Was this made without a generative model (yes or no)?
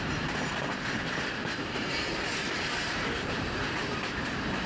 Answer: no